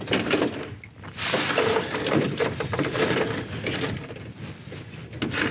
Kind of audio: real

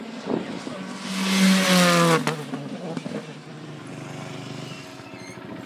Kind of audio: real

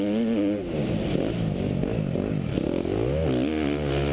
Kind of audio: real